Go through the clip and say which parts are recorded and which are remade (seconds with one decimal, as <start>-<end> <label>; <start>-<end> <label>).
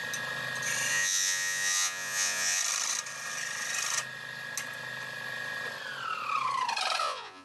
0.0-0.9 recorded; 0.9-2.6 remade; 2.6-7.0 recorded; 7.0-7.4 remade